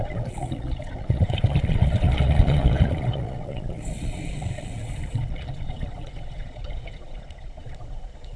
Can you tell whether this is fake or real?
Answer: fake